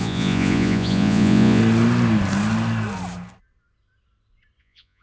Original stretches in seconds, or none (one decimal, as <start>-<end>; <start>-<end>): 1.6-4.6